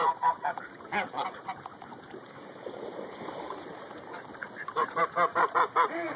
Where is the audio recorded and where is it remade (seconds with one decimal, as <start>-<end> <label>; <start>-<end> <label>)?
0.0-6.2 remade